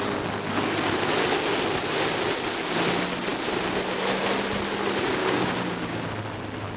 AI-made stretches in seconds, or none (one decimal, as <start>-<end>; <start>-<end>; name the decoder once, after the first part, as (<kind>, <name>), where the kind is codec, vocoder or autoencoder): 5.2-6.1 (codec, DAC)